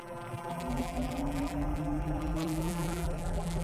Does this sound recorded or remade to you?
remade